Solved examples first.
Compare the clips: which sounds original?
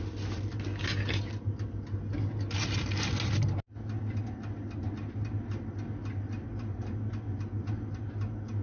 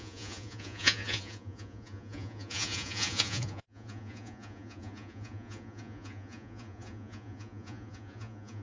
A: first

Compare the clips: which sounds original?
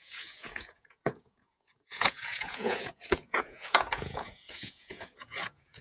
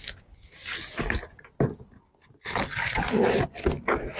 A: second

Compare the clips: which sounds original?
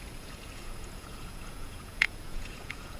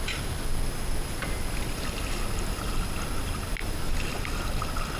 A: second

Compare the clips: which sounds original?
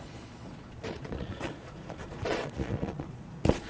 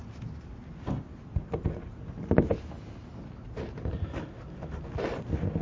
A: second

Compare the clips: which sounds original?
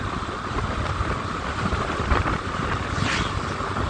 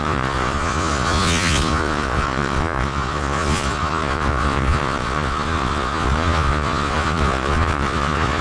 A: first